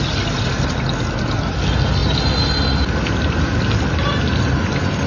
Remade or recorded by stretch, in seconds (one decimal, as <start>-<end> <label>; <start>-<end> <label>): 0.0-5.1 recorded